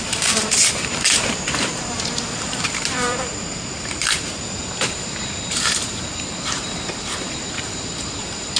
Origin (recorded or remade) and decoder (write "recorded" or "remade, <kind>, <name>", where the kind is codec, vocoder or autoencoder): remade, vocoder, BigVGAN v2